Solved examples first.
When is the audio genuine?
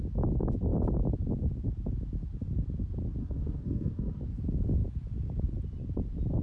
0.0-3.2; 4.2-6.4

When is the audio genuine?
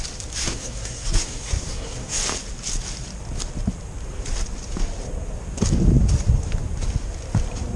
0.0-0.4; 2.2-7.8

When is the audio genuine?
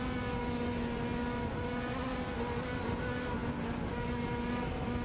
0.0-5.0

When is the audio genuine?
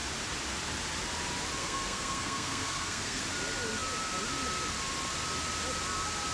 0.0-1.6; 3.2-6.3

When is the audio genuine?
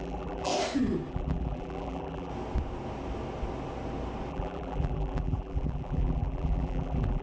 0.5-1.1; 2.3-4.3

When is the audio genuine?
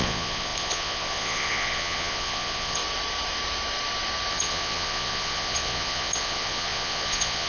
2.8-4.3